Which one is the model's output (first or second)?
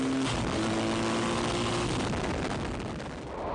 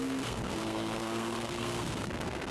second